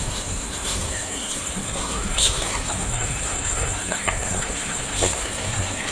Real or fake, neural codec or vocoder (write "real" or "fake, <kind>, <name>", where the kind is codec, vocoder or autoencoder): fake, codec, SNAC